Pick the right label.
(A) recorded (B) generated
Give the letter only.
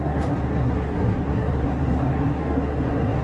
B